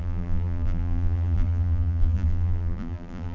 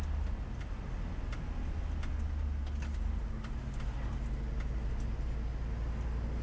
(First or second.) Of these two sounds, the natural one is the second